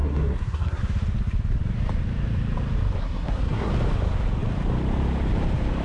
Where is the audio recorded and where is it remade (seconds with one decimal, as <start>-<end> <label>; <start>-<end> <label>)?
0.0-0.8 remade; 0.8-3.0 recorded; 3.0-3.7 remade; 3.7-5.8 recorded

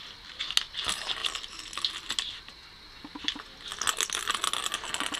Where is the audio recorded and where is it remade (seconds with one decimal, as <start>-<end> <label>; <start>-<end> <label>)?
0.0-5.2 recorded

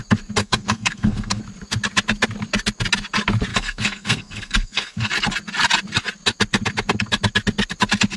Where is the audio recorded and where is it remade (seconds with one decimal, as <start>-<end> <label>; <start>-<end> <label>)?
0.0-0.4 recorded; 0.4-1.4 remade; 1.4-3.5 recorded; 3.5-5.1 remade; 5.1-8.2 recorded